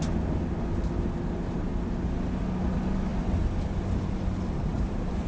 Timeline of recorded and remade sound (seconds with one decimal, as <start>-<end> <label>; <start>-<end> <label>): 0.0-4.7 recorded; 4.7-5.3 remade